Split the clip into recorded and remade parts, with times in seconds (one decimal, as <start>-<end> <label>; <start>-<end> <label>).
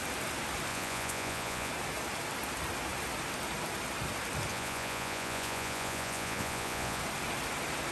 0.0-0.7 recorded; 0.7-1.7 remade; 1.7-4.5 recorded; 4.5-7.0 remade; 7.0-7.9 recorded